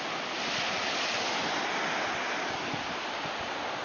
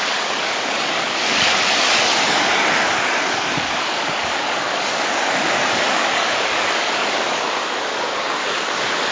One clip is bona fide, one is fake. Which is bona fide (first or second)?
first